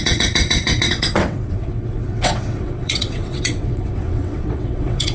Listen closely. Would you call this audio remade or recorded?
remade